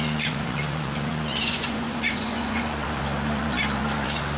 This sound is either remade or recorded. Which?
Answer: remade